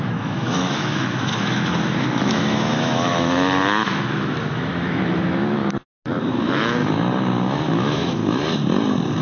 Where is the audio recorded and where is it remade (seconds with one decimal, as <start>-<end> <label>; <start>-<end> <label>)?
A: 0.0-5.6 remade; 5.6-6.3 recorded; 6.3-6.8 remade; 6.8-7.7 recorded; 7.7-8.2 remade; 8.2-9.2 recorded